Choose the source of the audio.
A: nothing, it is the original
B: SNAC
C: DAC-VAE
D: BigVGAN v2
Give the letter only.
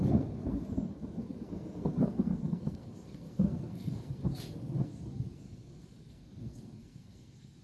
B